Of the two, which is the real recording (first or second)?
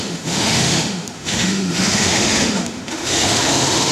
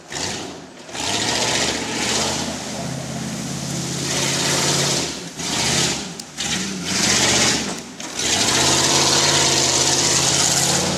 second